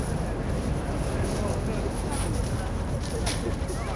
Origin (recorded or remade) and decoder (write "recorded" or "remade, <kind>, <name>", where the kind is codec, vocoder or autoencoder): recorded